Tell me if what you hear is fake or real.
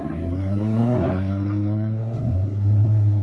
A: fake